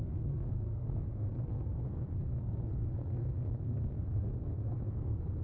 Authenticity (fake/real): fake